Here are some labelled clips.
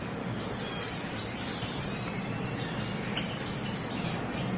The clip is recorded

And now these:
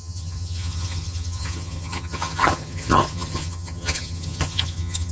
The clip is remade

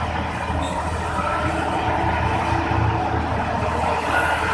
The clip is recorded